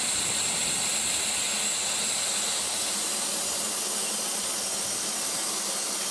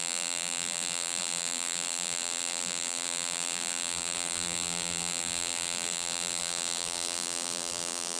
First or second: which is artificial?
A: second